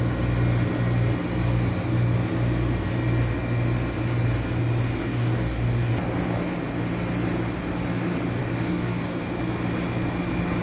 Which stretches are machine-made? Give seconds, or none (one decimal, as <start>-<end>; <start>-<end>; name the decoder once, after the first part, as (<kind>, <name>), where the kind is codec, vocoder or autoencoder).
5.0-5.9 (codec, DAC); 8.4-9.2